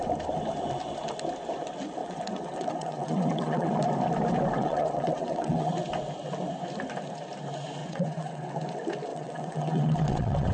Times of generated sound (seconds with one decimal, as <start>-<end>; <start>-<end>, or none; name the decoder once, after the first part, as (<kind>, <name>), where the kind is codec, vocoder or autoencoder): 2.0-3.7 (vocoder, WaveNeXt); 4.6-5.7; 7.8-8.5; 9.1-10.5